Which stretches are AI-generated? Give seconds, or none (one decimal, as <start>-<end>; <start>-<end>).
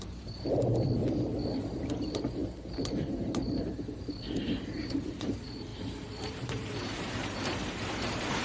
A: 0.0-0.7; 1.8-2.4; 4.4-5.7; 6.3-8.4